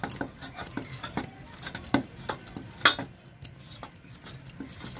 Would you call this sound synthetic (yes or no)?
no